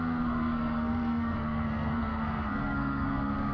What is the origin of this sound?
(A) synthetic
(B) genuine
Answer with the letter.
A